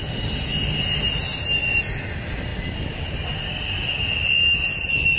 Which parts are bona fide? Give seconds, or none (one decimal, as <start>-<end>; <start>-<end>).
0.0-5.2